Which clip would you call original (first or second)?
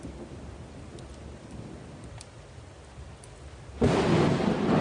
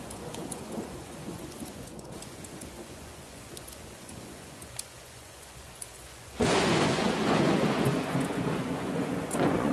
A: first